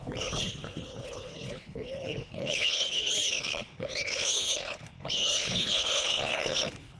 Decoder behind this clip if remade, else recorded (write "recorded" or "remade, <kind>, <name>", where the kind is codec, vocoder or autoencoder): remade, codec, HILCodec